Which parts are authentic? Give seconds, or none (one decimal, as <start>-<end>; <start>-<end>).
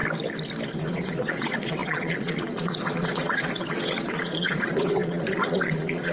0.0-0.8